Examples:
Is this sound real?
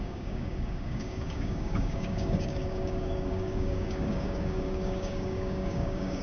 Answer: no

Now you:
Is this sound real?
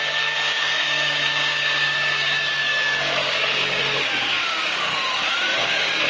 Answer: no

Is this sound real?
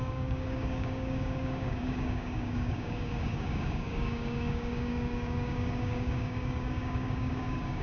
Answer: no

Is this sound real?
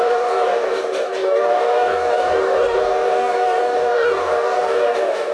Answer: no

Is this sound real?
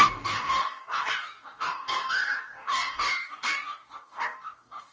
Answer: no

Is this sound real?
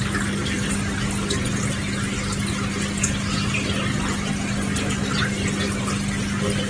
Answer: yes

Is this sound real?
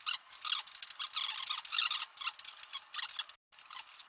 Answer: yes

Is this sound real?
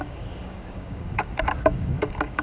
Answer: no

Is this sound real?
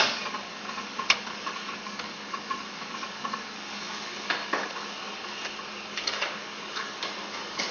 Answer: no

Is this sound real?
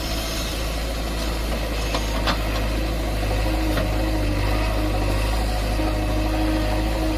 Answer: yes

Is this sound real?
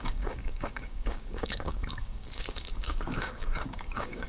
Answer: no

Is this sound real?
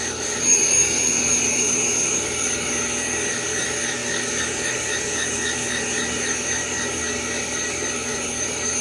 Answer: no